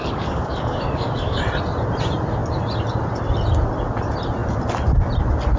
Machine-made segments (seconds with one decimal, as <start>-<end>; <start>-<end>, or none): 0.0-1.4